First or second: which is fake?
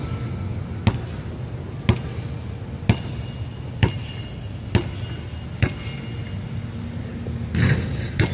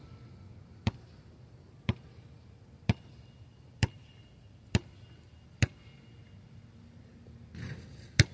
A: second